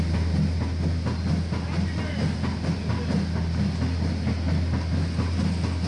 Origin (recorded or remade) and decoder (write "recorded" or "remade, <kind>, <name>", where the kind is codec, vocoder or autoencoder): recorded